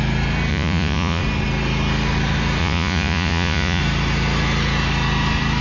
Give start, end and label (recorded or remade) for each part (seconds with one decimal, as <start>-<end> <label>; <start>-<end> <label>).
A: 0.0-0.5 recorded; 0.5-1.2 remade; 1.2-2.6 recorded; 2.6-3.8 remade; 3.8-5.6 recorded